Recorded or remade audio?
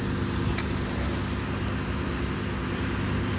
recorded